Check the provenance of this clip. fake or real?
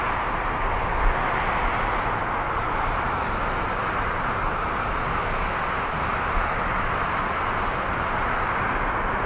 real